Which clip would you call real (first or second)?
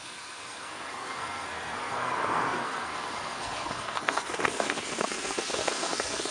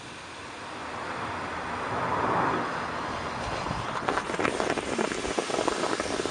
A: second